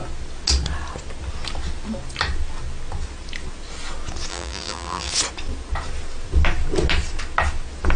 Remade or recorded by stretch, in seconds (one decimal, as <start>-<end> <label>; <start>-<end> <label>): 0.0-4.3 recorded; 4.3-5.1 remade; 5.1-8.0 recorded

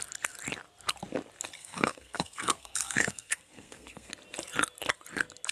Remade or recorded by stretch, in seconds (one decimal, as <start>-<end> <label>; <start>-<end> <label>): 0.0-1.6 recorded; 1.6-4.1 remade; 4.1-5.5 recorded